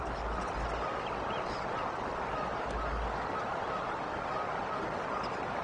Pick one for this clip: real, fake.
real